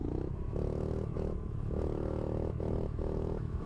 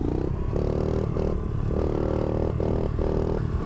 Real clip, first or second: second